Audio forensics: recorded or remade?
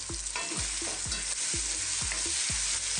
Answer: recorded